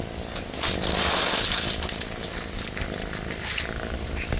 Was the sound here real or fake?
real